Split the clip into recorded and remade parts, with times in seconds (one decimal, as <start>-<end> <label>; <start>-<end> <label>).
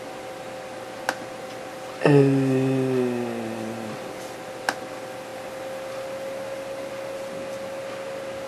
0.0-8.5 recorded